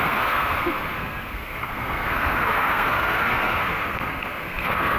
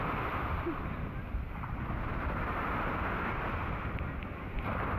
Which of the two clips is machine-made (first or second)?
first